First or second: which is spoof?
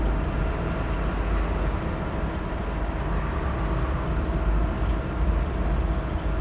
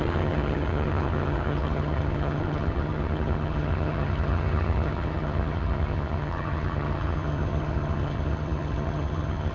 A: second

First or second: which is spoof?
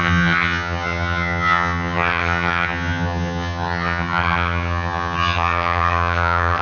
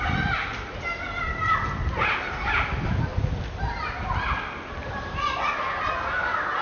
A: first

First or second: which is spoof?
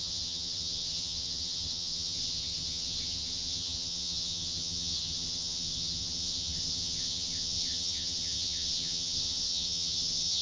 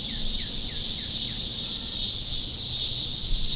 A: first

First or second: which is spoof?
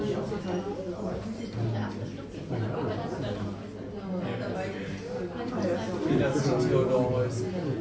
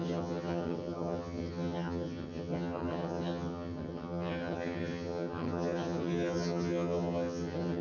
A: second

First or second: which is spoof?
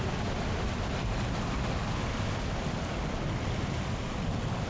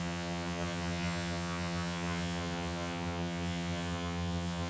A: second